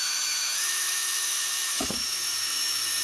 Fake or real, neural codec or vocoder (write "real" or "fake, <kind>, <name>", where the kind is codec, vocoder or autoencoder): fake, autoencoder, DAC-VAE